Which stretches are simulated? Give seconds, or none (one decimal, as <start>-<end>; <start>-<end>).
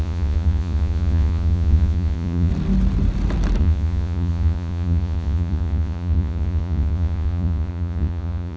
0.0-2.5; 3.6-8.6